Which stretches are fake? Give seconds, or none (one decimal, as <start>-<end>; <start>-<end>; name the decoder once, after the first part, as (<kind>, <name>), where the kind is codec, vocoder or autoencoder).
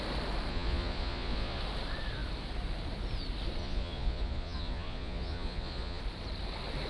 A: 0.5-1.6 (vocoder, Vocos); 3.6-6.0